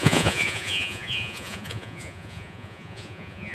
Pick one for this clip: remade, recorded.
remade